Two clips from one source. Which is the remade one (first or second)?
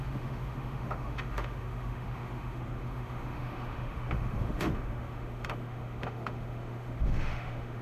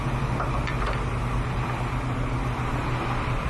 first